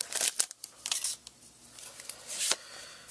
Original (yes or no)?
yes